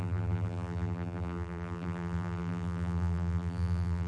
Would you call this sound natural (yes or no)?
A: no